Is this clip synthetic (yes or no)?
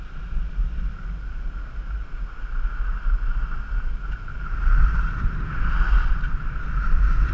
no